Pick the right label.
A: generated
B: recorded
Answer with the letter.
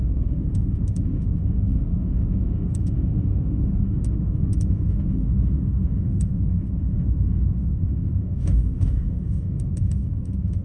A